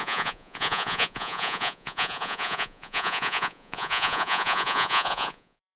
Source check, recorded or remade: remade